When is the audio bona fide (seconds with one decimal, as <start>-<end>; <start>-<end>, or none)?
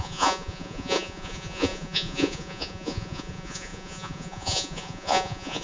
none